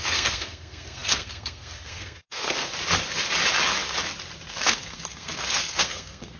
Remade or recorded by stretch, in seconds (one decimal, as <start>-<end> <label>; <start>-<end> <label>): 0.0-2.7 remade; 2.7-4.5 recorded; 4.5-6.4 remade